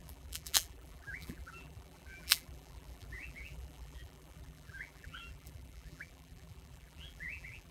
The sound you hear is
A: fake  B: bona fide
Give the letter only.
A